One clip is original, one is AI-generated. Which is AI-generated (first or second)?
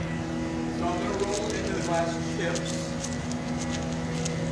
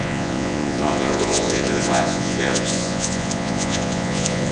second